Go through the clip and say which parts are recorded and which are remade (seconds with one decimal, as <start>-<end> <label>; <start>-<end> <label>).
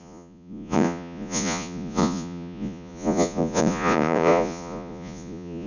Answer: 0.0-5.7 remade